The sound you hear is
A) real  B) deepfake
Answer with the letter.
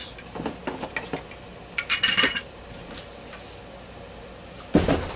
A